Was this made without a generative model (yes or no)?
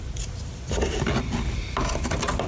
yes